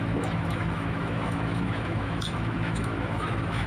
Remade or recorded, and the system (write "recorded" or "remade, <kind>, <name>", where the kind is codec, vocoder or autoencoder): remade, autoencoder, DAC-VAE